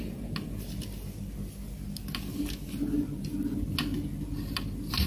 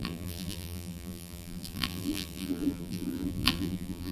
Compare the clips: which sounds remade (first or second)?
second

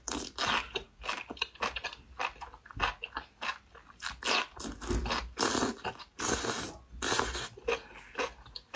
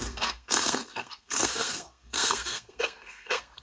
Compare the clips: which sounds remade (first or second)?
second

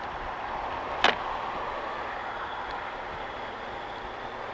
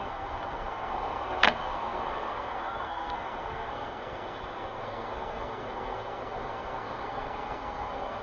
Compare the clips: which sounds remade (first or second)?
second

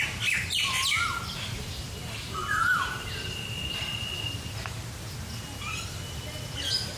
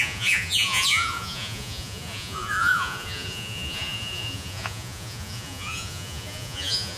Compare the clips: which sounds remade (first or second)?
second